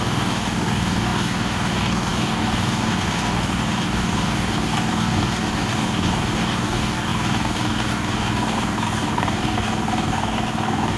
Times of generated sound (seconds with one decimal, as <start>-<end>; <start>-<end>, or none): 0.0-11.0